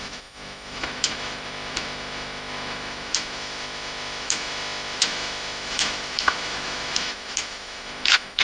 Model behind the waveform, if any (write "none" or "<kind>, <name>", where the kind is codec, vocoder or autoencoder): autoencoder, DAC-VAE